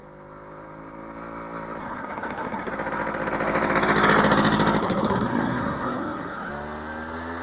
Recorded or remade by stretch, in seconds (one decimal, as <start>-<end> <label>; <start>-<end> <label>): 0.0-1.8 recorded; 1.8-2.7 remade; 2.7-4.8 recorded; 4.8-6.5 remade; 6.5-7.4 recorded